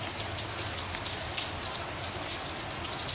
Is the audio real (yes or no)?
yes